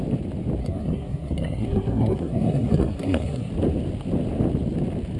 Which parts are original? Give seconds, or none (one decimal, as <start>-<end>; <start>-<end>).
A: 0.0-0.6; 3.5-5.2